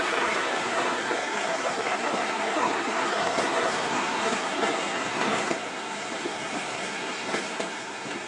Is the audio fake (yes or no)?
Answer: yes